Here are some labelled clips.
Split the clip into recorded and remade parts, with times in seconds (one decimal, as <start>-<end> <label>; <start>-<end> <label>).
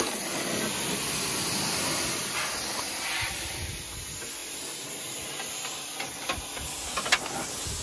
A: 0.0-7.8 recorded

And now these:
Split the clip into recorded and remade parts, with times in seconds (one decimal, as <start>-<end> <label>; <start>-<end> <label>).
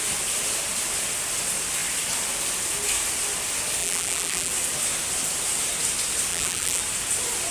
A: 0.0-3.8 recorded; 3.8-4.5 remade; 4.5-6.3 recorded; 6.3-6.8 remade; 6.8-7.5 recorded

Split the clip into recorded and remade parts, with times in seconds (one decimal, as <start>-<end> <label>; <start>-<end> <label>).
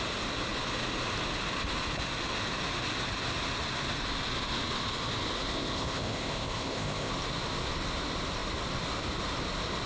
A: 0.0-5.5 recorded; 5.5-7.1 remade; 7.1-9.9 recorded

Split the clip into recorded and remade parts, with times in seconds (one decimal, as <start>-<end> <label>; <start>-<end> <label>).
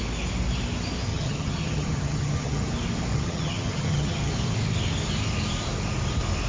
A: 0.0-1.1 recorded; 1.1-2.7 remade; 2.7-3.1 recorded; 3.1-4.3 remade; 4.3-6.5 recorded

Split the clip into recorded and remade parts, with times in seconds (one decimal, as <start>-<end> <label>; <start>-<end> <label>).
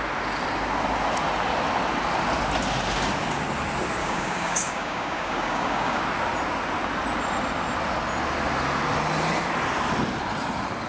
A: 0.0-4.0 recorded; 4.0-6.0 remade; 6.0-10.9 recorded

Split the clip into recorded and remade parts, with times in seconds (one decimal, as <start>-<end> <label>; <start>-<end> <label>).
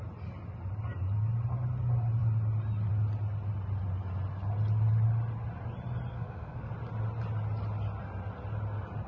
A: 0.0-6.1 recorded; 6.1-6.7 remade; 6.7-9.1 recorded